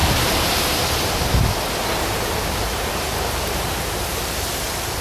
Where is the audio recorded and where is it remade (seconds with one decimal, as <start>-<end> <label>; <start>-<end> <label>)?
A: 0.0-1.9 recorded; 1.9-5.0 remade